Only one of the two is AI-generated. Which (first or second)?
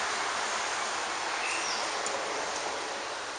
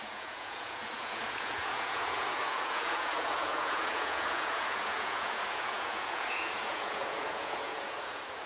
second